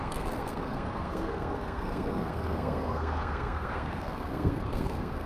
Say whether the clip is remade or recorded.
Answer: remade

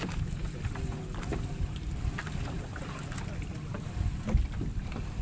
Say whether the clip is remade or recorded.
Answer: recorded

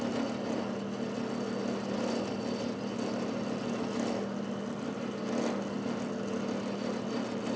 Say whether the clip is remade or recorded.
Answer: recorded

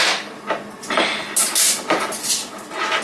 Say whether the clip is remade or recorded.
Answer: recorded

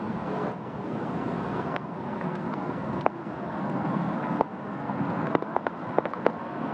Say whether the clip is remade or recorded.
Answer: remade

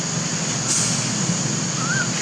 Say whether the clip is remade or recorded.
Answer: recorded